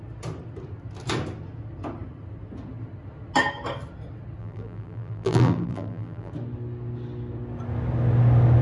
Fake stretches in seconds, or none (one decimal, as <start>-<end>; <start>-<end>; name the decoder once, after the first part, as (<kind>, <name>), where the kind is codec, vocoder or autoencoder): 4.4-6.3 (vocoder, BigVGAN v2)